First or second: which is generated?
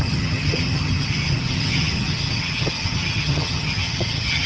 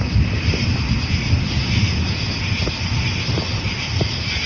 first